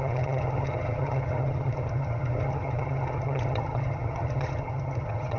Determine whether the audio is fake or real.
fake